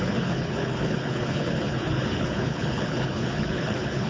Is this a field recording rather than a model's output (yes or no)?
no